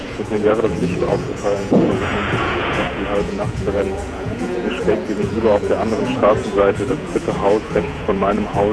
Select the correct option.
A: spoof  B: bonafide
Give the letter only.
A